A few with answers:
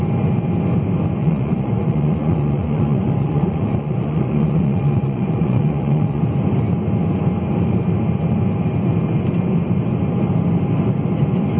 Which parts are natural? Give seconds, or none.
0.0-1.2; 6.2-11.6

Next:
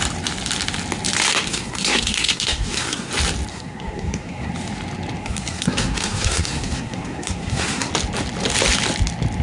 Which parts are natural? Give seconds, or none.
0.0-1.5; 3.1-3.5; 4.5-5.2; 7.9-9.4